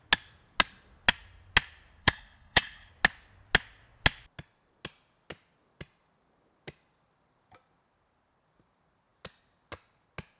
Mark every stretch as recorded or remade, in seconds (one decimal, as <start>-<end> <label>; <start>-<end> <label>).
0.0-2.0 recorded; 2.0-2.9 remade; 2.9-10.4 recorded